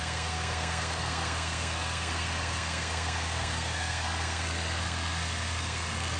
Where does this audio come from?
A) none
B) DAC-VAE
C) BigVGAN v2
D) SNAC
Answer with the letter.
D